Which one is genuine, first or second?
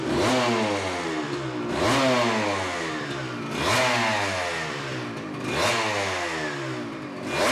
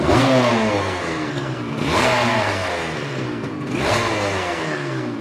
first